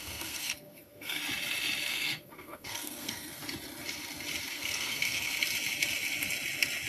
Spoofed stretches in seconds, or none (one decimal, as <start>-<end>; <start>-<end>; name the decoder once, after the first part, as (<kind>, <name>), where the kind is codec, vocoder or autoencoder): 0.0-1.2 (codec, SNAC); 1.9-3.4; 4.5-5.3